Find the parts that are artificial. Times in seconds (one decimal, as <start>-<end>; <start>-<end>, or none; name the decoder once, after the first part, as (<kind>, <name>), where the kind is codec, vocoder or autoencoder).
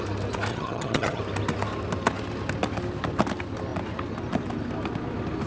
0.5-1.2 (vocoder, HiFi-GAN)